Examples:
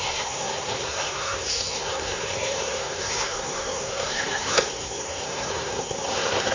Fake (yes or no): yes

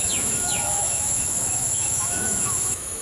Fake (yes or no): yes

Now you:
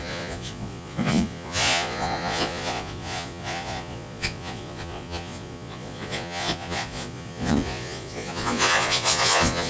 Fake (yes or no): yes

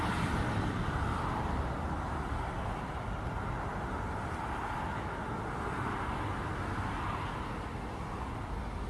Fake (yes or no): no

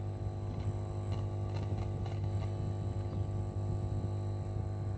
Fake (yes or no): no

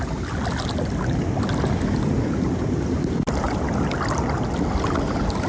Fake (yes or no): no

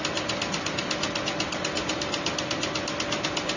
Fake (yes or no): no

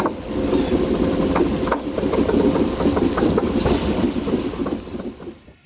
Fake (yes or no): yes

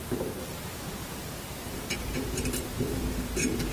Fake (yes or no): yes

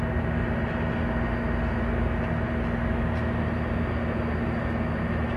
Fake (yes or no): yes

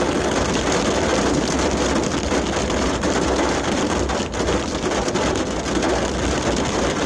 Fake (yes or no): no